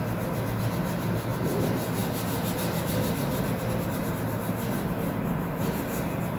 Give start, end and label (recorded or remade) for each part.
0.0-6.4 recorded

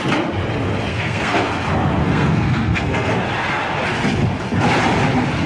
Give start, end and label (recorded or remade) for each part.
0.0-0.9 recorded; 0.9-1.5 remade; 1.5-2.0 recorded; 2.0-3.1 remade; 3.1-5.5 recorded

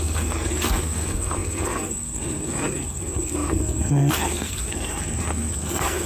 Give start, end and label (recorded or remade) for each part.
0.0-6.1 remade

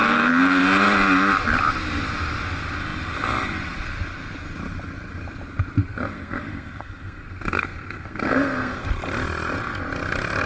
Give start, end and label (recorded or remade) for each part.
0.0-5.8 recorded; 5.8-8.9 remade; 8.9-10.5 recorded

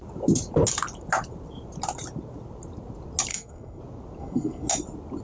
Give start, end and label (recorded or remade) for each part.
0.0-3.3 recorded; 3.3-3.8 remade; 3.8-4.2 recorded; 4.2-4.7 remade; 4.7-5.2 recorded

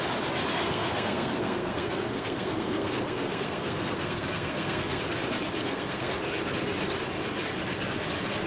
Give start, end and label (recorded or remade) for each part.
0.0-0.5 recorded; 0.5-5.0 remade; 5.0-5.6 recorded; 5.6-6.1 remade; 6.1-8.5 recorded

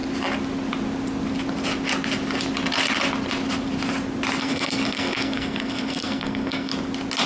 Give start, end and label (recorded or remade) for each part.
0.0-4.4 recorded; 4.4-6.7 remade; 6.7-7.3 recorded

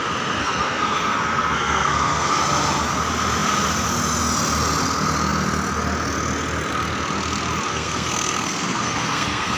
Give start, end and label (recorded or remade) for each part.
0.0-0.4 recorded; 0.4-2.4 remade; 2.4-7.7 recorded; 7.7-9.6 remade